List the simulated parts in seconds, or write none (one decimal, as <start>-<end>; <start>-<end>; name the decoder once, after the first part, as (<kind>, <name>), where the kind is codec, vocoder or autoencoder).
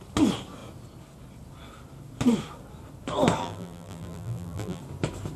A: 3.4-4.8 (vocoder, BigVGAN v2)